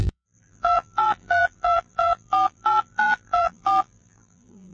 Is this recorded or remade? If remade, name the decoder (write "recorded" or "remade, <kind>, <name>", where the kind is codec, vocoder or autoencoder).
remade, vocoder, BigVGAN v2